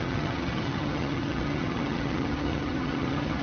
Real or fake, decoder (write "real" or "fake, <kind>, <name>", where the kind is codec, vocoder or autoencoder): fake, vocoder, HiFi-GAN